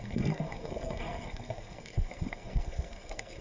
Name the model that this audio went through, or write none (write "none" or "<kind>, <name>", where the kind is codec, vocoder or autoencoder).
codec, SNAC